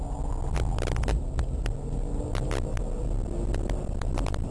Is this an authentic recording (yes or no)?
yes